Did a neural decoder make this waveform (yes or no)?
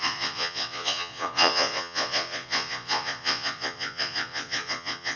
yes